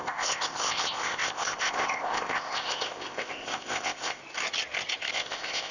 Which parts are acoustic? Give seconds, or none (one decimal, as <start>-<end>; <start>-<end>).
4.2-5.1